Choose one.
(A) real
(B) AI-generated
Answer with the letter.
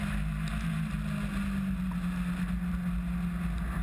A